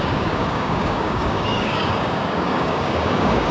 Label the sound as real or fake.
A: fake